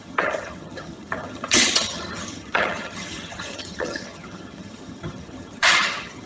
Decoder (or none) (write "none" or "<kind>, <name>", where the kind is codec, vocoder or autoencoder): vocoder, HiFi-GAN